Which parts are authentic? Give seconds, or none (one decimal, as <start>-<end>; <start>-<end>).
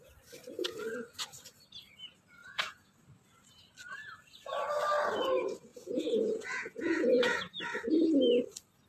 0.0-2.4; 2.9-5.7; 7.6-8.9